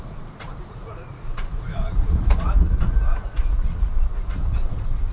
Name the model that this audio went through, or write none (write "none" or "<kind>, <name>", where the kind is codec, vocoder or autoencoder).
vocoder, Vocos